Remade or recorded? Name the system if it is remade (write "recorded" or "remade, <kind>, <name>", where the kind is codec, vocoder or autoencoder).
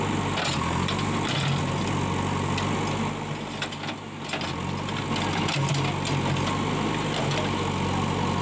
recorded